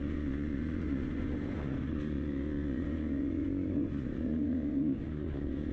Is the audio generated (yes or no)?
yes